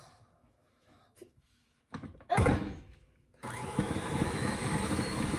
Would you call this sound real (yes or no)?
no